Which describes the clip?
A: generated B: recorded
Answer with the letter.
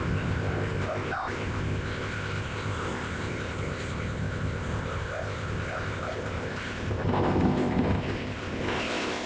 A